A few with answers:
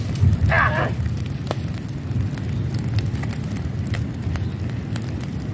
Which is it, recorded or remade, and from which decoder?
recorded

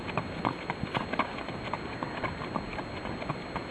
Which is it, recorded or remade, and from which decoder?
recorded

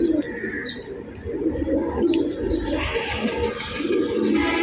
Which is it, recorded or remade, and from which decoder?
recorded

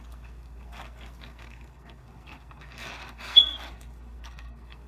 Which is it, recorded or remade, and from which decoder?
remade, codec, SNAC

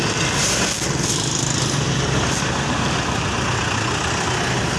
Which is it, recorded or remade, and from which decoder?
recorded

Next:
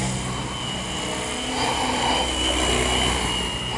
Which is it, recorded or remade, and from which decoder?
recorded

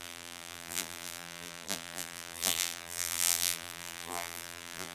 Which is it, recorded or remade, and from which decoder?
remade, vocoder, BigVGAN v2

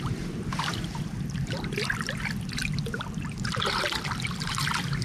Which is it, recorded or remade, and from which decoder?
remade, vocoder, BigVGAN v2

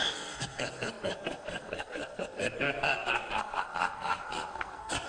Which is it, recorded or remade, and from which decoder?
remade, codec, SNAC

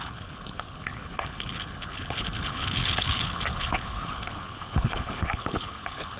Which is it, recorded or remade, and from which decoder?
remade, codec, HILCodec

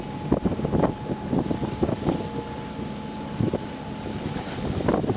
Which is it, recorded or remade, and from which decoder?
recorded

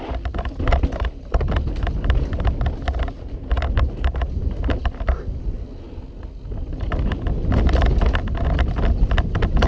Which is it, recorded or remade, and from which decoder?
recorded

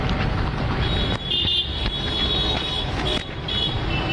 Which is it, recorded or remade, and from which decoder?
recorded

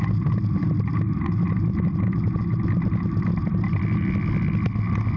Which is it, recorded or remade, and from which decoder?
recorded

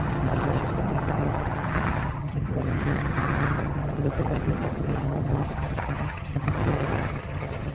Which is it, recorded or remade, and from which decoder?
remade, vocoder, HiFi-GAN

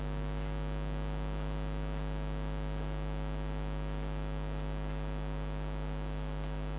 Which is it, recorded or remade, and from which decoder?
recorded